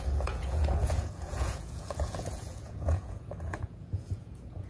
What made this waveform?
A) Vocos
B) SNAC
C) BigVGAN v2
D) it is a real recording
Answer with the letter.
A